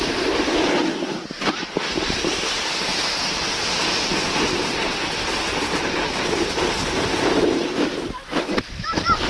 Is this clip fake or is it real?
fake